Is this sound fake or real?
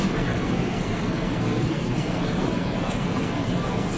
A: fake